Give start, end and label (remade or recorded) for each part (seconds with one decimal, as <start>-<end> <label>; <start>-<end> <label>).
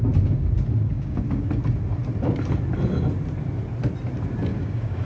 0.0-0.8 recorded; 0.8-1.5 remade; 1.5-4.5 recorded; 4.5-5.1 remade